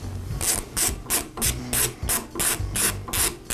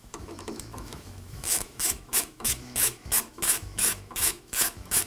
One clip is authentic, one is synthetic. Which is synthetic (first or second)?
second